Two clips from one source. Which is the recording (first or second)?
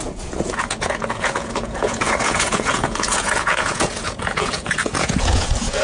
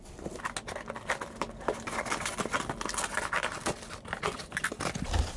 second